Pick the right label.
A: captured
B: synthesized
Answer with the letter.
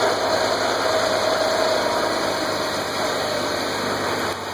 A